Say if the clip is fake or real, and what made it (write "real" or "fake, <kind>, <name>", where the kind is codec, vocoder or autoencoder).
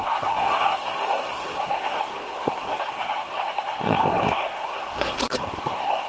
fake, codec, SNAC